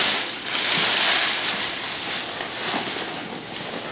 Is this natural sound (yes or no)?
yes